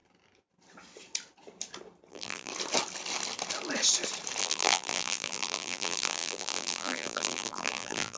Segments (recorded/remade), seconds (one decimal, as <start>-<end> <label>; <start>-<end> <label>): 0.0-2.1 recorded; 2.1-2.5 remade; 2.5-4.4 recorded; 4.4-8.2 remade